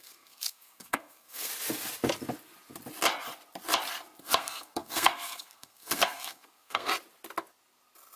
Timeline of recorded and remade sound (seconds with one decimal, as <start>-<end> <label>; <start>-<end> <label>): 0.0-1.5 remade; 1.5-4.2 recorded; 4.2-6.9 remade; 6.9-8.2 recorded